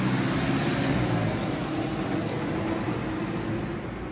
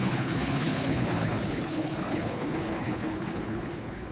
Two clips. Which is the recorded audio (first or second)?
first